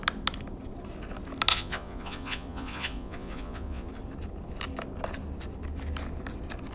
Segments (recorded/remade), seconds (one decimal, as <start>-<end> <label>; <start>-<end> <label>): 0.0-1.5 recorded; 1.5-3.9 remade; 3.9-6.7 recorded